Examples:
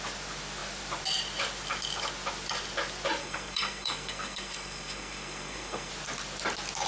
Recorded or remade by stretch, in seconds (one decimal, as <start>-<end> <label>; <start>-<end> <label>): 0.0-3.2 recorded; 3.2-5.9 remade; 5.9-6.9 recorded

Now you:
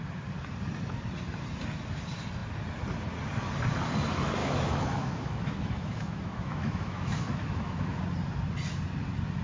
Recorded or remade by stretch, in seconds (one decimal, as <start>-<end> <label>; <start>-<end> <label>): 0.0-4.4 recorded; 4.4-8.0 remade; 8.0-9.4 recorded

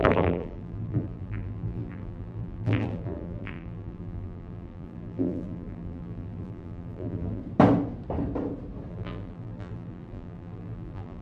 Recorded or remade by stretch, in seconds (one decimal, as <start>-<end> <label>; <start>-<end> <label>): 0.0-7.4 remade; 7.4-8.9 recorded; 8.9-11.2 remade

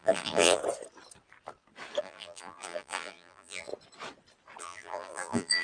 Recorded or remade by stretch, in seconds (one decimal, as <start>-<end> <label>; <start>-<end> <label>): 0.0-0.6 remade; 0.6-2.0 recorded; 2.0-3.7 remade; 3.7-4.6 recorded; 4.6-5.6 remade